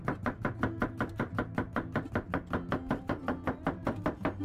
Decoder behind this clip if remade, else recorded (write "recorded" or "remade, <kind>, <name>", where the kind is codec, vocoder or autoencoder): recorded